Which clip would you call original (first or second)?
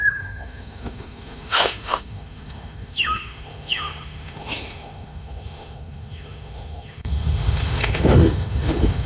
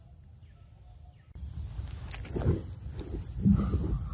second